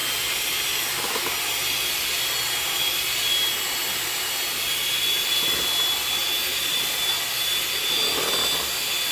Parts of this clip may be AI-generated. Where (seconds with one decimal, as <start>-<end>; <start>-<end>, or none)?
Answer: 6.5-7.1